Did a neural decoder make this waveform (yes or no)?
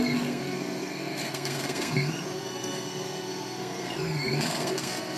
yes